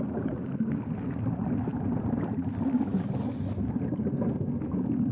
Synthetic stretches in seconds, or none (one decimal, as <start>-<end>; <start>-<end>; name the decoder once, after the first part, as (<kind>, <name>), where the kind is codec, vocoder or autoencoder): 1.7-3.3 (vocoder, BigVGAN v2)